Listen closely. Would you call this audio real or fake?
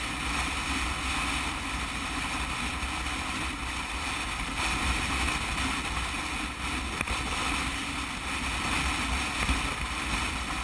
real